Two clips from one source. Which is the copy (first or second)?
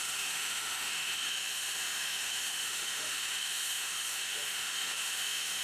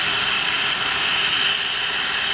first